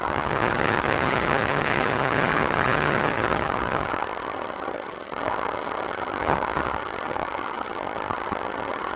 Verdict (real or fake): fake